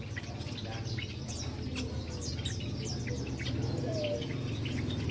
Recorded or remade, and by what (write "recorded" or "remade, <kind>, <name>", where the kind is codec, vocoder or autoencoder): recorded